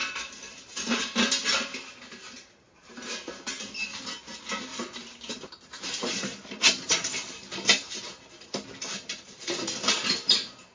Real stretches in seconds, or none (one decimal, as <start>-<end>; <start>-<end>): 1.0-4.7; 8.0-10.7